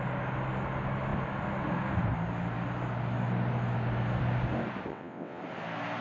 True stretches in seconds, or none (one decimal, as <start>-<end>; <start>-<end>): 0.0-4.9; 5.4-6.0